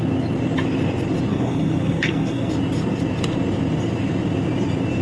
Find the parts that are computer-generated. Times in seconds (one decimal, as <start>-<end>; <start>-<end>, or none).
1.3-2.5